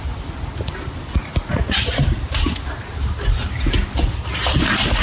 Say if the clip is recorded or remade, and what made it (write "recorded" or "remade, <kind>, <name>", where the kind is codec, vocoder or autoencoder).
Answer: recorded